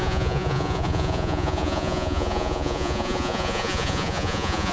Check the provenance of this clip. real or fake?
fake